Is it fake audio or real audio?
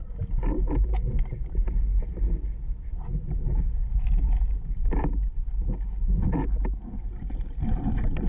real